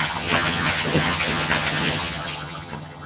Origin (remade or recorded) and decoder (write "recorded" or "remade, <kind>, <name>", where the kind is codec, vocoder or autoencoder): remade, vocoder, HiFi-GAN